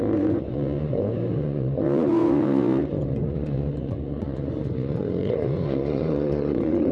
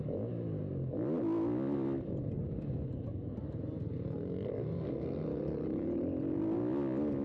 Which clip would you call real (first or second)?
second